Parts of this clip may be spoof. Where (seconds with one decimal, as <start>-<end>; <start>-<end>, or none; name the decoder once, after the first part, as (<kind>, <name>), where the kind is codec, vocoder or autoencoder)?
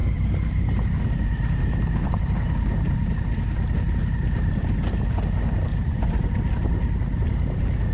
5.7-6.2 (vocoder, Vocos)